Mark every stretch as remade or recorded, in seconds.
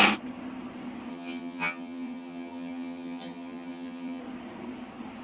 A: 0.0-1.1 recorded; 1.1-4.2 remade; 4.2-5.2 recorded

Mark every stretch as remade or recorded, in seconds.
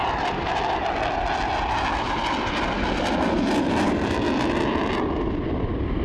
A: 0.0-6.0 recorded